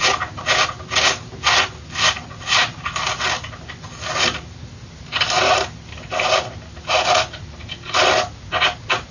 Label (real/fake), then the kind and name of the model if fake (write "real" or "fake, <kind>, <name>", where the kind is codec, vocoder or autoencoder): real